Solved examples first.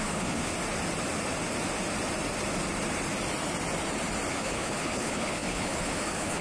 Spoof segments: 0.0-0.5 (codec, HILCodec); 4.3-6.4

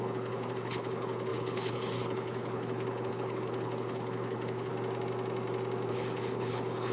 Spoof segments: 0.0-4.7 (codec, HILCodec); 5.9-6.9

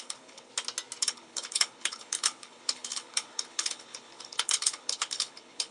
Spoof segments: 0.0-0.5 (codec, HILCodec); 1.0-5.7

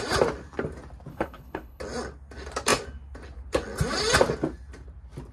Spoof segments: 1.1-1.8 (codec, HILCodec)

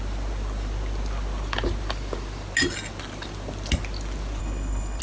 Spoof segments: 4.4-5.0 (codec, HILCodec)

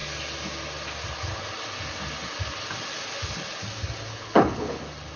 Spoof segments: 4.1-4.8 (codec, HILCodec)